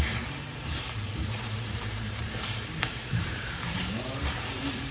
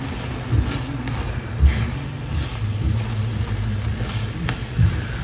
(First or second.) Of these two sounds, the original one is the second